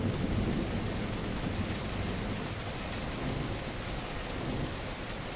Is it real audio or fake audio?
real